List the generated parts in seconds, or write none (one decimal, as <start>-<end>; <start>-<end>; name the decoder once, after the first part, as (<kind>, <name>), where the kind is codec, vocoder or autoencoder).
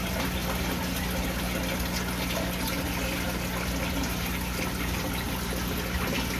none